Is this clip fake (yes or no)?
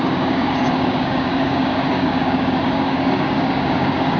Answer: yes